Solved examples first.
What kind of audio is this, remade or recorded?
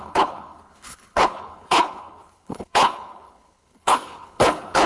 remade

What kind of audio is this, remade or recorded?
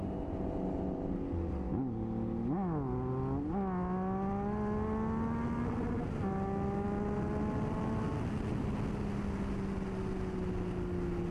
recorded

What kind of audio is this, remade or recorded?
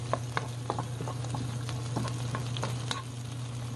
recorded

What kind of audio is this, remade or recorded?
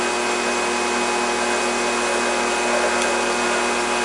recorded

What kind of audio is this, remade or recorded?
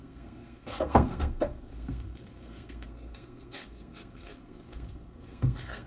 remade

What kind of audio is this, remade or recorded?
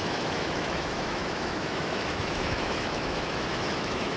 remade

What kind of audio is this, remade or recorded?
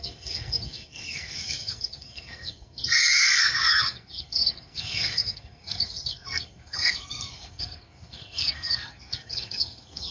remade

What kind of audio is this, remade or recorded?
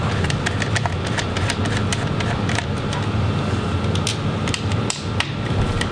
recorded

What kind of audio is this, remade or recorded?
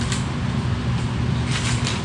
recorded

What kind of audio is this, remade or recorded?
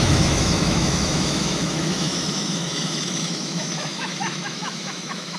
remade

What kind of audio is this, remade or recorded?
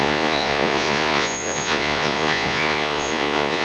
remade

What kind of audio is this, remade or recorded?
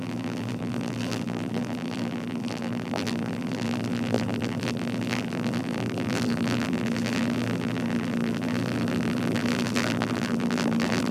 remade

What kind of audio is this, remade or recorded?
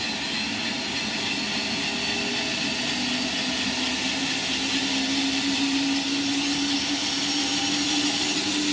recorded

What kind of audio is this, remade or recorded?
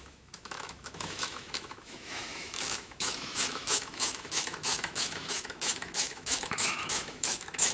remade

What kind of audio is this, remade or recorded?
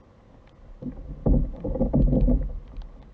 recorded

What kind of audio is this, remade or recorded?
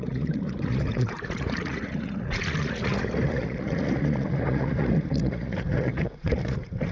remade